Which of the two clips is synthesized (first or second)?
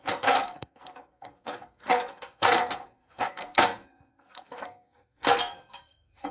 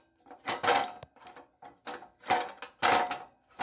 first